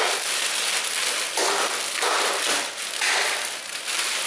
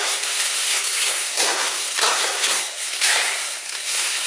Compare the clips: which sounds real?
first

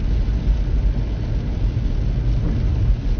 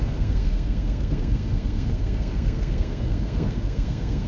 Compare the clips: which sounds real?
first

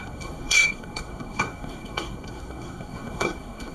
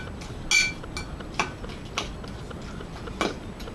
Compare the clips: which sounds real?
second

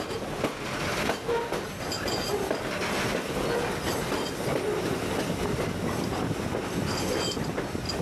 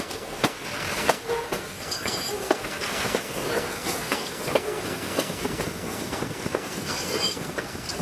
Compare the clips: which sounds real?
first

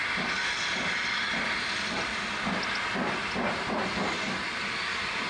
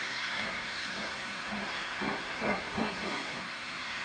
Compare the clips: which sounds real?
first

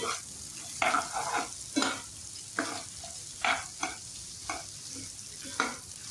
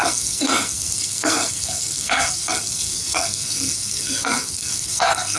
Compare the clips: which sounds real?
first